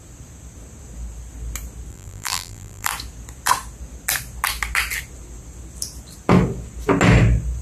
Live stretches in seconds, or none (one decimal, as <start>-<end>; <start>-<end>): 0.0-1.9; 2.9-7.6